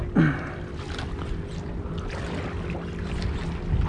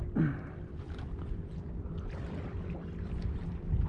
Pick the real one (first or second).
first